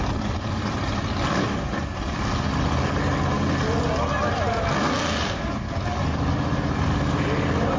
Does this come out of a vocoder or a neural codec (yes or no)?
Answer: no